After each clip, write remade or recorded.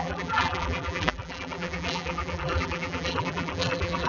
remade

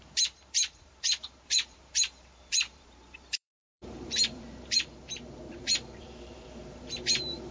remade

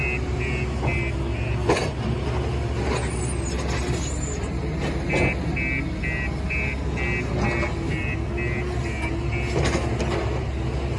recorded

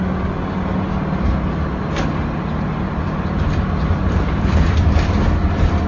recorded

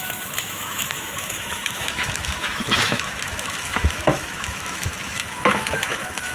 remade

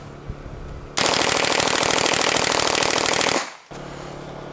recorded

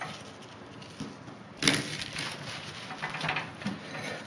recorded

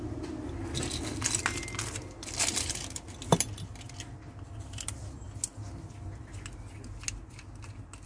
recorded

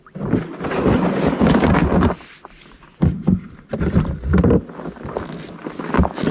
recorded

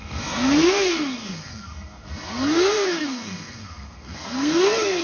remade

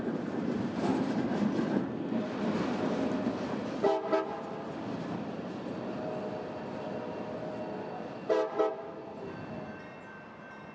recorded